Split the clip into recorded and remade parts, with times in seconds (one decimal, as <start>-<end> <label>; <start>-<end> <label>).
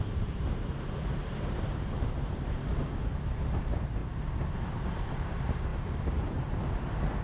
0.0-2.7 remade; 2.7-3.6 recorded; 3.6-4.0 remade; 4.0-4.7 recorded; 4.7-7.2 remade